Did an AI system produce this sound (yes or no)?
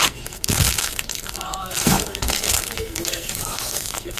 yes